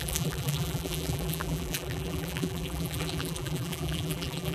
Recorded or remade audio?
remade